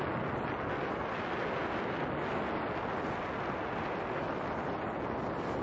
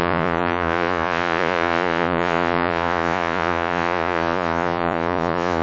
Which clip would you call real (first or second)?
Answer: first